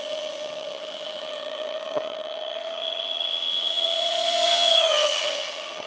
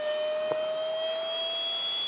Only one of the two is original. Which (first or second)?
second